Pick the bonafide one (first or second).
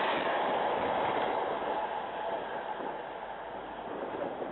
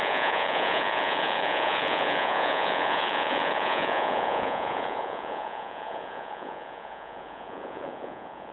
first